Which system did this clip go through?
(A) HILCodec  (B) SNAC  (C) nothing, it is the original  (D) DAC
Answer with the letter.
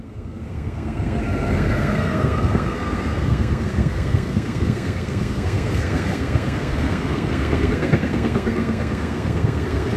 B